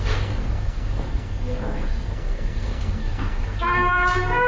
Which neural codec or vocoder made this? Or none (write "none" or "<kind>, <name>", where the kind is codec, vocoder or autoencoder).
codec, SNAC